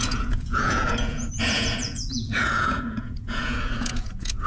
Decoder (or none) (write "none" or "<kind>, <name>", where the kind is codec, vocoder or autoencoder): vocoder, Vocos